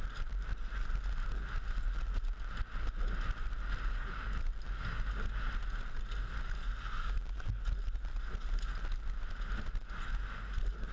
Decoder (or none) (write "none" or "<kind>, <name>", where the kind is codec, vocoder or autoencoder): none